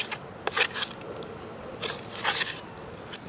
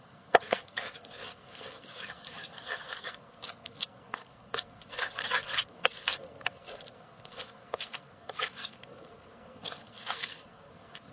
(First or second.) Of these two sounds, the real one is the first